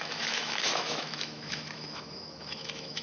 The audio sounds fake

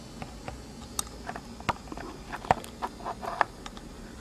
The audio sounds real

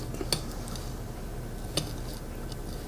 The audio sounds real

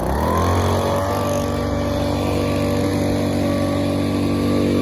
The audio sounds real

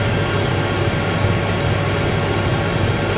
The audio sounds real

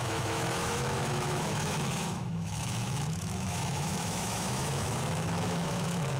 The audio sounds fake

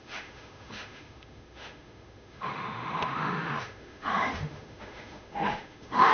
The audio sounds fake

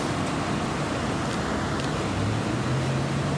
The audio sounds real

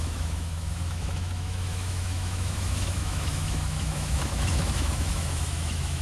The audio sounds fake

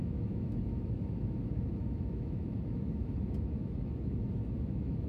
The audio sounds fake